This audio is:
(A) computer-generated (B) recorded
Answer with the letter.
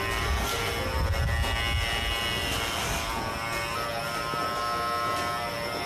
B